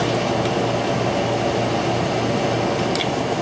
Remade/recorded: recorded